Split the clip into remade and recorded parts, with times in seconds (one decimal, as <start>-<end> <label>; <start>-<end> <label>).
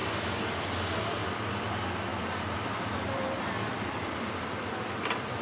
0.0-2.1 recorded; 2.1-5.4 remade